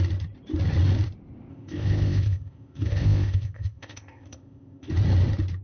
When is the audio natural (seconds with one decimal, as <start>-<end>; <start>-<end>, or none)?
0.0-1.5; 4.9-5.6